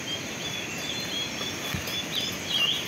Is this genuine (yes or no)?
yes